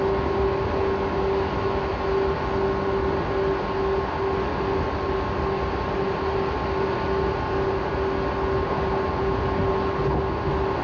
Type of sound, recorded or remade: recorded